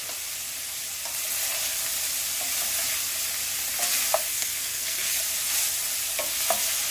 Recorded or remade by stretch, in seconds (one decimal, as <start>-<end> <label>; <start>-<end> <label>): 0.0-4.3 recorded; 4.3-5.2 remade; 5.2-6.9 recorded